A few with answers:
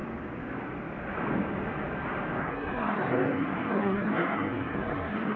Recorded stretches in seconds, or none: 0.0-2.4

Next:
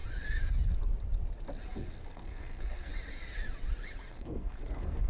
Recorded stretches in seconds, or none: 0.0-2.1; 2.9-4.1

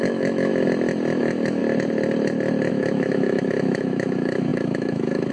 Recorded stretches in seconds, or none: 0.5-1.2; 1.6-2.7

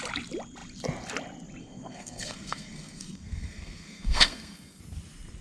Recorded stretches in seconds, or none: 0.0-1.6; 4.8-5.4

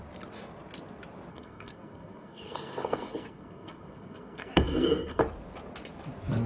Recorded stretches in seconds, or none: 0.0-1.3; 5.2-6.5

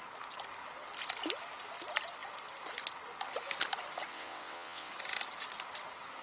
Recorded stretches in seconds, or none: 0.0-4.1; 4.9-6.2

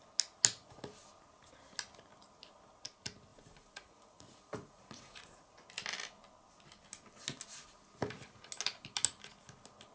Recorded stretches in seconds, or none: 0.0-3.3; 5.5-9.9